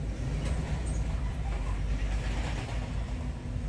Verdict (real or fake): real